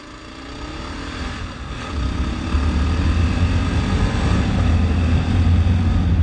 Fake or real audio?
real